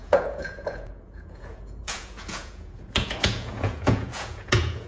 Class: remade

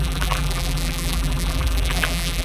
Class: remade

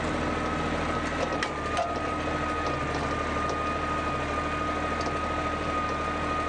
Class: recorded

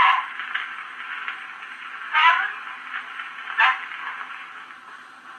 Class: recorded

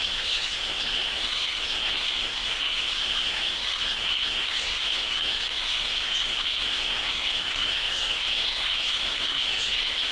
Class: remade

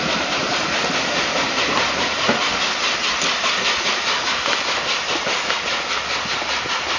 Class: recorded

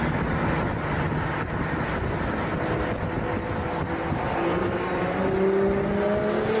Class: recorded